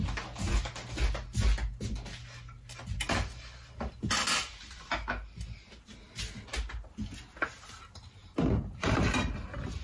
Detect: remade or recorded recorded